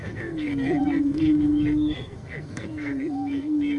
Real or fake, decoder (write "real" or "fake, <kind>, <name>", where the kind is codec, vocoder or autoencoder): fake, codec, SNAC